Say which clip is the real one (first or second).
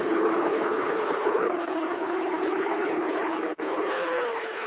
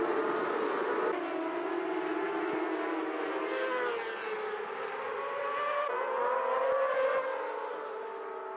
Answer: second